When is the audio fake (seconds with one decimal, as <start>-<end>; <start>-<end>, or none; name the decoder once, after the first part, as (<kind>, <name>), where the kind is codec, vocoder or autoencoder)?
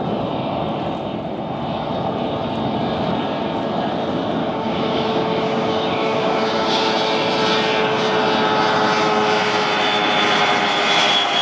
4.4-6.9 (codec, DAC)